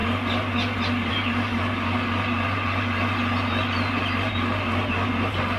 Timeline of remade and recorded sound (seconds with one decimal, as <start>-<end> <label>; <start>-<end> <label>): 0.0-5.6 recorded